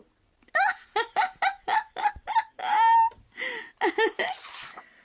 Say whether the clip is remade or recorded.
recorded